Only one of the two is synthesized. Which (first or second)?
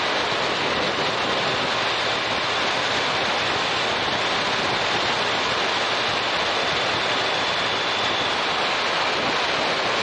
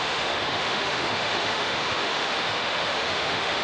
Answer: second